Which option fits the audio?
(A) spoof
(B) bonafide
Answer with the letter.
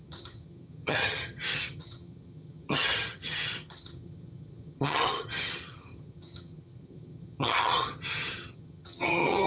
A